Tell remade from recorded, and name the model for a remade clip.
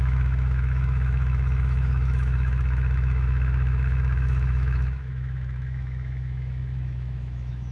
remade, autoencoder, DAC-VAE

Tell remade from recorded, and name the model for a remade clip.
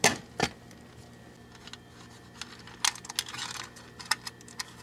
recorded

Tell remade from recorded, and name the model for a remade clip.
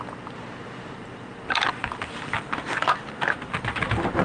recorded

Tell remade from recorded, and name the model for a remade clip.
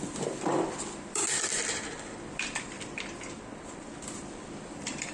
remade, vocoder, BigVGAN v2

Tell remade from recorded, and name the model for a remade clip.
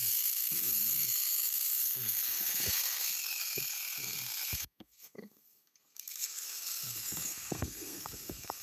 remade, codec, SNAC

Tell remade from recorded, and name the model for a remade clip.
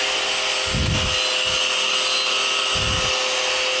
recorded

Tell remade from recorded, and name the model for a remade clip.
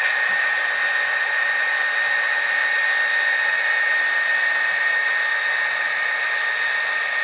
recorded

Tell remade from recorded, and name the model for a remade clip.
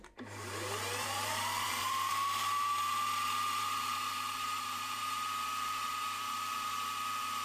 remade, vocoder, BigVGAN v2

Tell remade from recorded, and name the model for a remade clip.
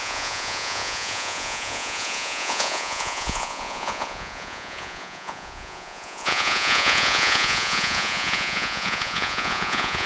remade, vocoder, Vocos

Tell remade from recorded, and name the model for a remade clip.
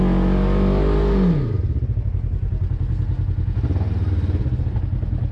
recorded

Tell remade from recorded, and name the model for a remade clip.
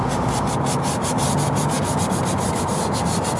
recorded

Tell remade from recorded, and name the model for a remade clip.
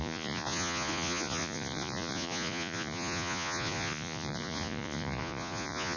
remade, vocoder, Vocos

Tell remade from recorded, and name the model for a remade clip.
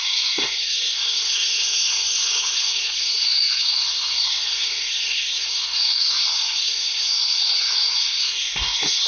remade, codec, SNAC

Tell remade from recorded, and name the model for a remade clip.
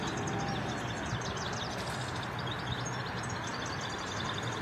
recorded